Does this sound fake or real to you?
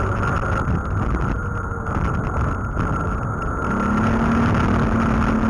real